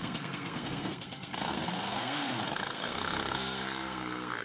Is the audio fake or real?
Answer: fake